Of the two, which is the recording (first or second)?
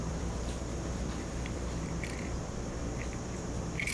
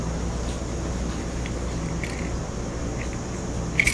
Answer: second